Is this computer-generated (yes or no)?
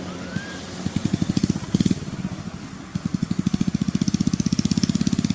no